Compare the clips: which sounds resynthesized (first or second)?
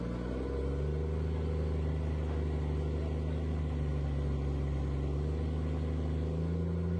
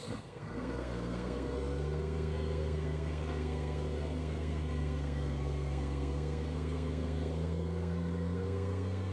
second